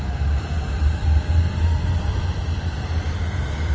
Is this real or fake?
fake